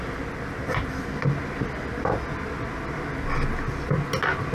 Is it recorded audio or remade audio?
recorded